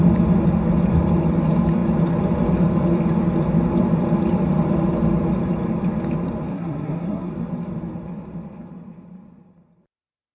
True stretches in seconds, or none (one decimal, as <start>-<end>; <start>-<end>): 0.0-6.5; 7.3-10.3